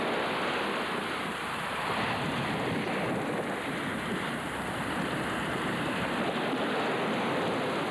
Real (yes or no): yes